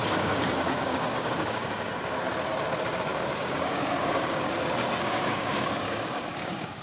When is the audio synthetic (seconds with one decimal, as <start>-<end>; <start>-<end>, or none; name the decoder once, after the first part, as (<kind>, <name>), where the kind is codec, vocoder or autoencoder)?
0.0-1.9 (codec, DAC); 3.1-4.5; 5.3-6.8